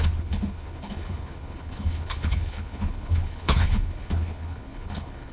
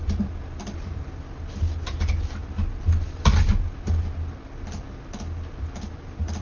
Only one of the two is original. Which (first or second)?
second